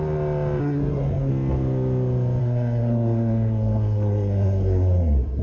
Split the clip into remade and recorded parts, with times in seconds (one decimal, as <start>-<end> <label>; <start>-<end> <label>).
0.0-0.6 recorded; 0.6-1.3 remade; 1.3-2.4 recorded; 2.4-5.4 remade